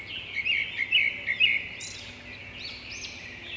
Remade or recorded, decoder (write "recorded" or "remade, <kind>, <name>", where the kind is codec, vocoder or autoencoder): recorded